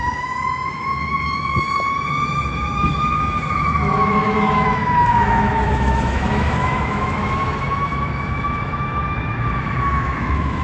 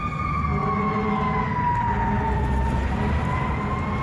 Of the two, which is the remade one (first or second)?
first